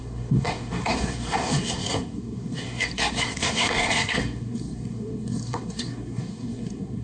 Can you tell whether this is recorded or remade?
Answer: remade